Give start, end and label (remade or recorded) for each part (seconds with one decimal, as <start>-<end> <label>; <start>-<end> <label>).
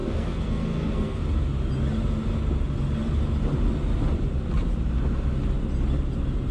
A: 0.0-1.2 remade; 1.2-6.5 recorded